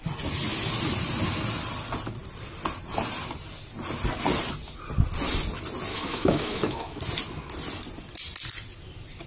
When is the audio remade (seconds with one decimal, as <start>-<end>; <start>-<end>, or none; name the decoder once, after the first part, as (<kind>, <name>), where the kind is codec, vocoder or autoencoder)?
5.9-7.0 (autoencoder, DAC-VAE)